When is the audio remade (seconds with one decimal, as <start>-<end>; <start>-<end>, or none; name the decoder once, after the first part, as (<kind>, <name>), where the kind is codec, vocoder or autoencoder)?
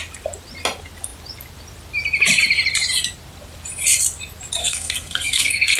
4.6-5.8 (codec, SNAC)